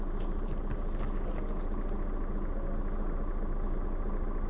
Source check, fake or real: real